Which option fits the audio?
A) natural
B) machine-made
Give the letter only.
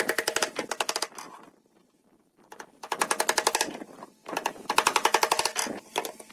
A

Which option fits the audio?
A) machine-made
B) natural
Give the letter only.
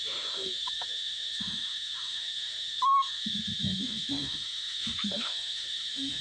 A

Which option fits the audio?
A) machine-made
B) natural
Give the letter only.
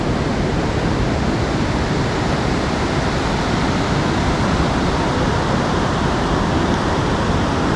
B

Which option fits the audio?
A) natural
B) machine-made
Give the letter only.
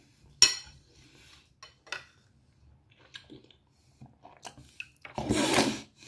A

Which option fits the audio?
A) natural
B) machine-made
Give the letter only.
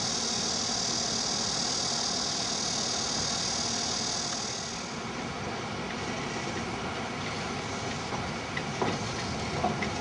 A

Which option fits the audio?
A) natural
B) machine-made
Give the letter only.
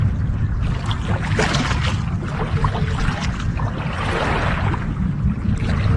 A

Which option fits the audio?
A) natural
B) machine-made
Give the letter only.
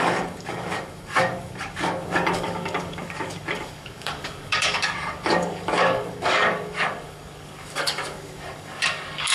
B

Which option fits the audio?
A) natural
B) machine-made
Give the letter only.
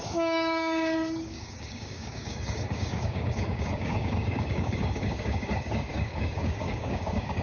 B